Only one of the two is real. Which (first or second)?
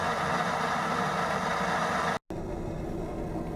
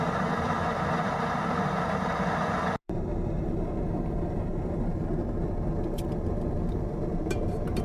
first